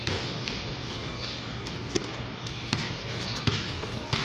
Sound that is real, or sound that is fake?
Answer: fake